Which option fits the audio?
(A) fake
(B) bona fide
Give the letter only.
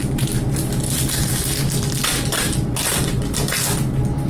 B